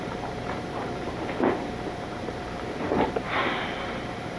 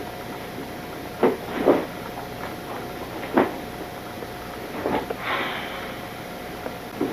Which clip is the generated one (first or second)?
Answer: first